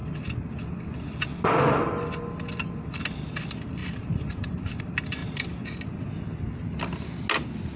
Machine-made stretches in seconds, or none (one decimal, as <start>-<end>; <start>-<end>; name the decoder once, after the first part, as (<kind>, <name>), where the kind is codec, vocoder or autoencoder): 3.8-4.8 (vocoder, BigVGAN v2); 5.2-6.0